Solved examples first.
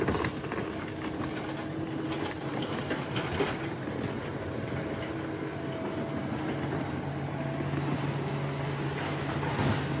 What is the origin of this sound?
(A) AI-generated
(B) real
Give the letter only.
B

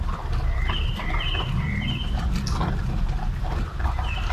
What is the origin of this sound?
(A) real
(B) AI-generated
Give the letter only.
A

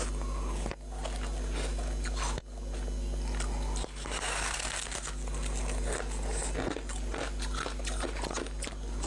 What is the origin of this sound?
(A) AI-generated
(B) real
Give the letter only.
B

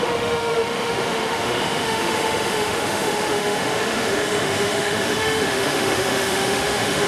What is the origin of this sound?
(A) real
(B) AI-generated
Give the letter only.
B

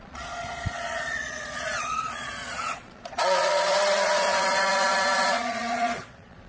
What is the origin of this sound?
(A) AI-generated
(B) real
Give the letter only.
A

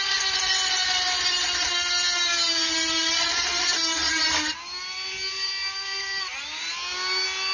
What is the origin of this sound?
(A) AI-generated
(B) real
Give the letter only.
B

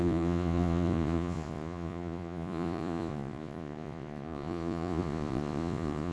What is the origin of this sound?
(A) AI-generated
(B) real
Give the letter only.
A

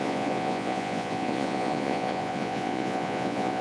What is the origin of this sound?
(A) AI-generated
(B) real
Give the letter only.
A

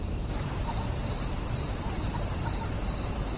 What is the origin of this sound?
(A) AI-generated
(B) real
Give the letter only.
A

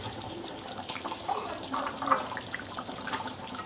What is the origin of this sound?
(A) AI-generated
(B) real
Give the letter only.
A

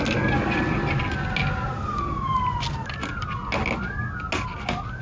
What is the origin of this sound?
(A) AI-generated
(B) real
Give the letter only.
B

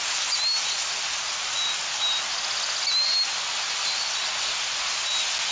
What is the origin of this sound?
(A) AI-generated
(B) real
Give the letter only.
B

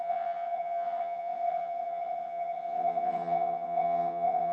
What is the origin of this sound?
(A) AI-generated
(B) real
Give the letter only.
A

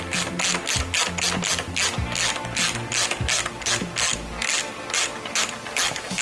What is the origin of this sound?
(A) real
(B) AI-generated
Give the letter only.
A